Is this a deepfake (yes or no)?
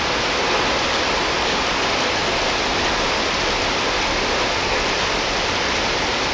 no